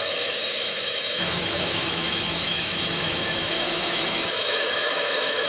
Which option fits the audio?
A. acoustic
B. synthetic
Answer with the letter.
B